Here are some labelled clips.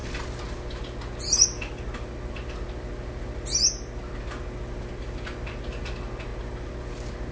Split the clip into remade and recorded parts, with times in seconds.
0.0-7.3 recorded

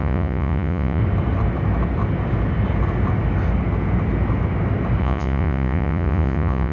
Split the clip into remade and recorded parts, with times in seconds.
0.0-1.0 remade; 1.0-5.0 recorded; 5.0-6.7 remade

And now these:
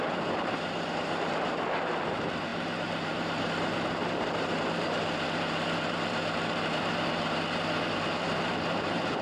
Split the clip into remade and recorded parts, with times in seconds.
0.0-9.2 remade

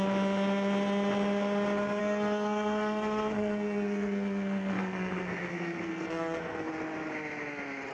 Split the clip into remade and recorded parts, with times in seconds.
0.0-2.0 recorded; 2.0-6.7 remade; 6.7-7.9 recorded

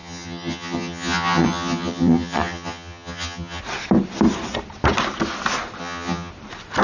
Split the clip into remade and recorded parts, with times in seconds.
0.0-3.6 remade; 3.6-5.8 recorded; 5.8-6.3 remade; 6.3-6.8 recorded

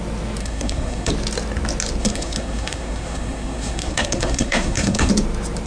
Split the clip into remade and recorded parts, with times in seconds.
0.0-0.4 recorded; 0.4-1.1 remade; 1.1-2.0 recorded; 2.0-5.1 remade; 5.1-5.7 recorded

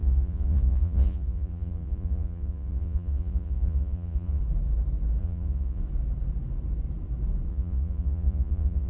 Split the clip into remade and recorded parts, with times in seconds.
0.0-4.4 remade; 4.4-5.2 recorded; 5.2-5.8 remade; 5.8-7.5 recorded; 7.5-8.9 remade